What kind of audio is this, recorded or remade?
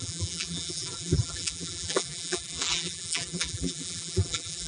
remade